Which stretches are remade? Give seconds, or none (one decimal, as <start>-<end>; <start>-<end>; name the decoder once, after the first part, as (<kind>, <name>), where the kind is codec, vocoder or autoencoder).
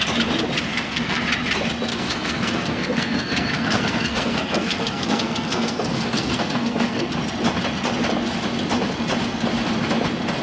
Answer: 0.7-1.2 (codec, SNAC); 1.9-7.1